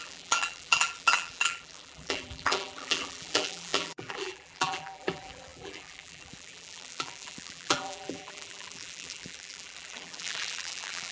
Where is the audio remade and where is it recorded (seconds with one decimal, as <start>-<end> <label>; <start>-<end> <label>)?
0.0-11.1 remade